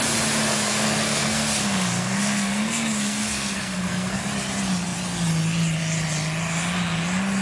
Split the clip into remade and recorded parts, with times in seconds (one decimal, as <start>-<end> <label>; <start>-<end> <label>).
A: 0.0-0.5 recorded; 0.5-4.2 remade; 4.2-7.4 recorded